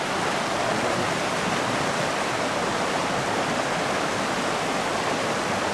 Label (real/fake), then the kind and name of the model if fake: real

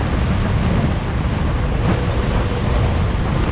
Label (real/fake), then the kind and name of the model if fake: real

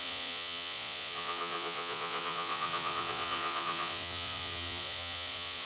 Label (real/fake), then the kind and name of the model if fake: fake, vocoder, Vocos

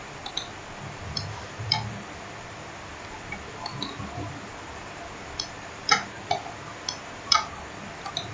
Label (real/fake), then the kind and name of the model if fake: real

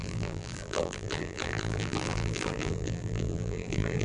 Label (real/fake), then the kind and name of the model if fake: fake, vocoder, BigVGAN v2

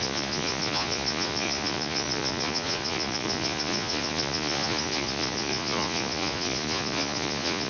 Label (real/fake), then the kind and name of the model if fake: fake, vocoder, Vocos